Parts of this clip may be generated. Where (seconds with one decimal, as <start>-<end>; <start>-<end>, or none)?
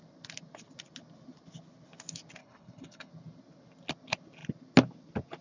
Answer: 2.4-3.1